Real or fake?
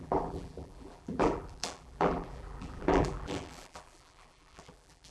fake